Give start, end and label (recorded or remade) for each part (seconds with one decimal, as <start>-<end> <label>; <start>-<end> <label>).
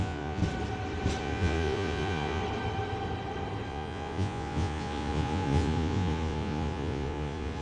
0.0-0.4 remade; 0.4-1.2 recorded; 1.2-2.4 remade; 2.4-3.7 recorded; 3.7-7.6 remade